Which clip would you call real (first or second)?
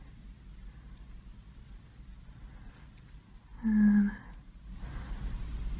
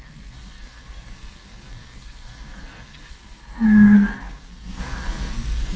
first